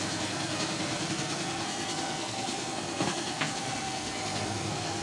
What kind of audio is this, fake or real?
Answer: fake